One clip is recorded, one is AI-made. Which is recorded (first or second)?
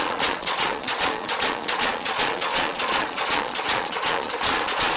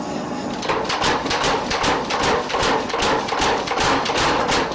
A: second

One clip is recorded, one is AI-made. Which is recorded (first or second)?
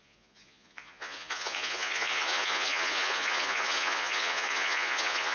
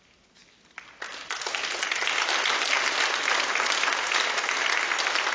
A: second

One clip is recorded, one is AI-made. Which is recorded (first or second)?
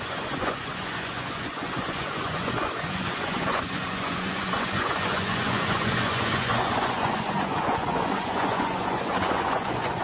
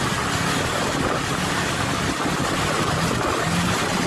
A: second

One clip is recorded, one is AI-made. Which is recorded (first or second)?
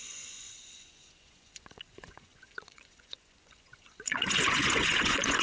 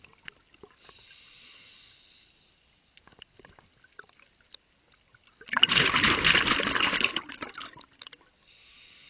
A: second